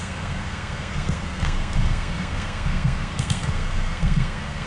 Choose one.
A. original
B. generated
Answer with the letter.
B